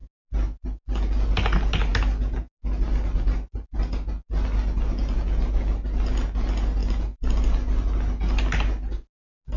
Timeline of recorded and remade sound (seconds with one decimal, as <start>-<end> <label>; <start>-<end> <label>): 0.0-9.6 recorded